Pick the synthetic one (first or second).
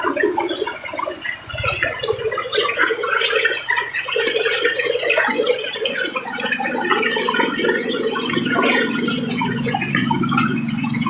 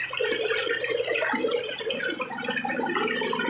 first